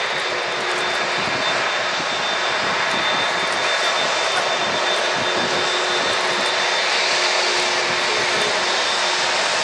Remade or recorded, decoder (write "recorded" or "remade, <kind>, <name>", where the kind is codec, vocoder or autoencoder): recorded